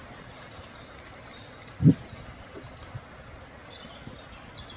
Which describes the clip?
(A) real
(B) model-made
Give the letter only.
A